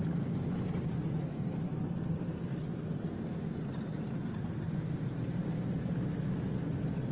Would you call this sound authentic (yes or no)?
yes